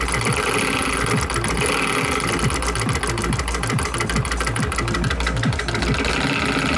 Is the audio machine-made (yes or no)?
no